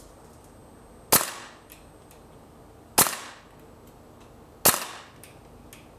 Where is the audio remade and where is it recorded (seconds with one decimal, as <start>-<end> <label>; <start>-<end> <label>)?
0.0-6.0 recorded